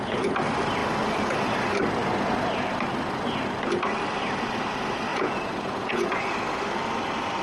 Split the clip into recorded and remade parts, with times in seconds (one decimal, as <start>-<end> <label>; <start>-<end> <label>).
0.0-5.1 recorded; 5.1-6.2 remade; 6.2-7.4 recorded